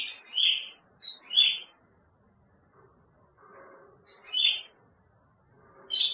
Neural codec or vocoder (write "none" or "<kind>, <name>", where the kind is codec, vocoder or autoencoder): none